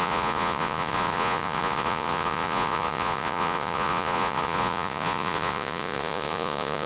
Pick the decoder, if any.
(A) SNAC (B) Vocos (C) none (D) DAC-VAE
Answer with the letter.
B